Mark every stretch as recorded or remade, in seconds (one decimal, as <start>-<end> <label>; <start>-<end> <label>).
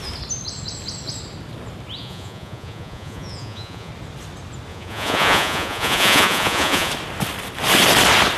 0.0-2.0 recorded; 2.0-3.9 remade; 3.9-4.7 recorded; 4.7-6.9 remade; 6.9-8.4 recorded